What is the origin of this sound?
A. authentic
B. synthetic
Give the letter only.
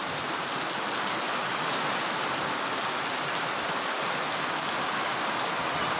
A